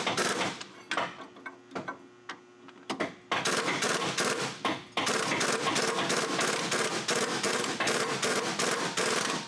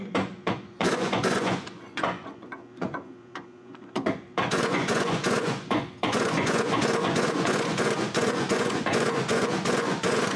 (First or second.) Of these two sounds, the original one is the first